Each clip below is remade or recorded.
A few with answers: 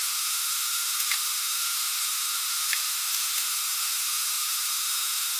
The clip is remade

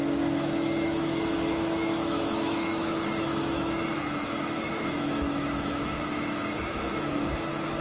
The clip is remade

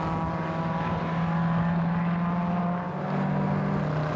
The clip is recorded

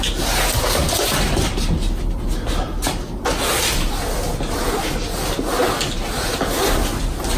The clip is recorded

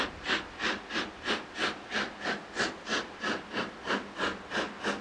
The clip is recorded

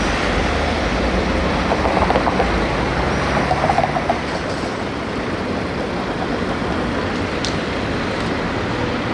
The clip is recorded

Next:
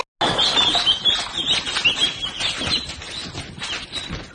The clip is recorded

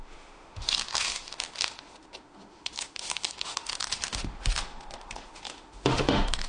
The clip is remade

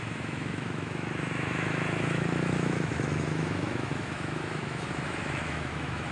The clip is remade